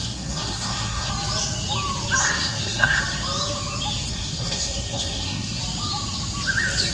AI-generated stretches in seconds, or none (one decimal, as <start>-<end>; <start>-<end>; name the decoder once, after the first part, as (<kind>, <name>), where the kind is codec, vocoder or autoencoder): 0.0-1.1 (codec, SNAC); 2.2-3.0; 4.1-5.6